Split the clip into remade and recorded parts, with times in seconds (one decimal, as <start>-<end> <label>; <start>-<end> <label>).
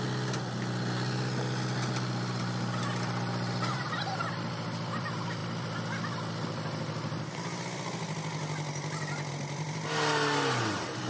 0.0-11.1 recorded